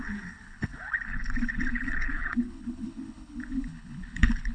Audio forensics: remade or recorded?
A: remade